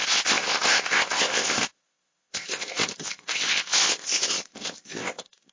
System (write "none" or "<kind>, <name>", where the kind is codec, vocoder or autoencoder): codec, ZipCodec